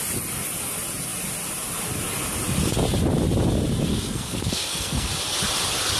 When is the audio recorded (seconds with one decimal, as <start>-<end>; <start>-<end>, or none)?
0.0-3.9; 5.1-6.0